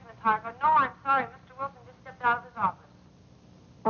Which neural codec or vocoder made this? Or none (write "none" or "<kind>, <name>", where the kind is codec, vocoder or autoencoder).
none